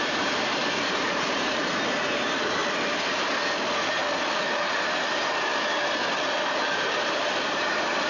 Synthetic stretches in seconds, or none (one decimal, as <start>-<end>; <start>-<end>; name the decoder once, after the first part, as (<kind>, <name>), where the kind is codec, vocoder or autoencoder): 0.0-2.6 (vocoder, BigVGAN v2); 4.4-5.5; 6.4-8.1